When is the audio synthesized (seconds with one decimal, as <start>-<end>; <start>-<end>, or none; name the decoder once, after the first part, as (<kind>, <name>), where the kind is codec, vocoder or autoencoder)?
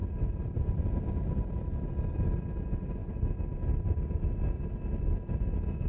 none